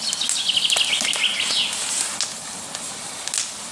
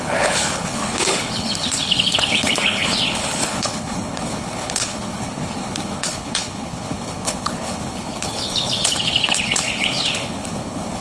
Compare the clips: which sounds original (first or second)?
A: first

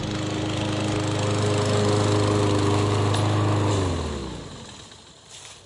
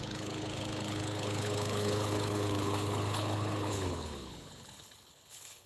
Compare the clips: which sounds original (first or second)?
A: first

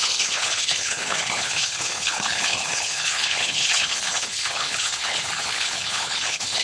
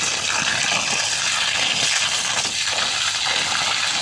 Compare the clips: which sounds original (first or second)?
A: second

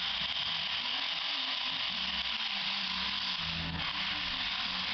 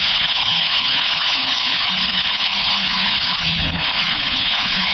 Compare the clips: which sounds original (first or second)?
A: first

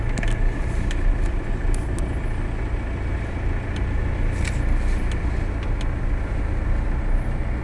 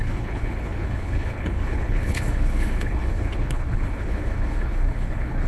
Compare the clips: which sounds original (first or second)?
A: first